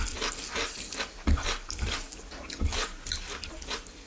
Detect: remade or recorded recorded